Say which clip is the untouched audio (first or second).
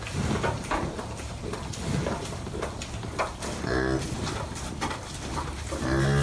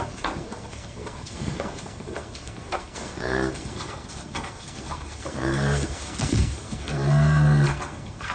first